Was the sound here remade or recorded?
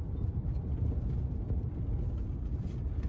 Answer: recorded